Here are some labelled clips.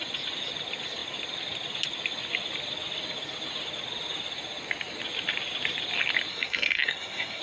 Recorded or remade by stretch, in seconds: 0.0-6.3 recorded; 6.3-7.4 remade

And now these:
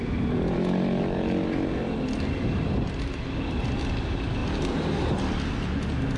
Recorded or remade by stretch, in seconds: 0.0-6.2 recorded